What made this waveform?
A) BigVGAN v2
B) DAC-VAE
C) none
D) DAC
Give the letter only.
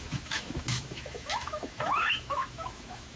B